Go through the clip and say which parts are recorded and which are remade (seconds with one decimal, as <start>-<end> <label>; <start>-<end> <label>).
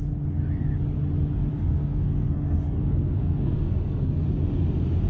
0.0-1.5 recorded; 1.5-4.3 remade; 4.3-5.1 recorded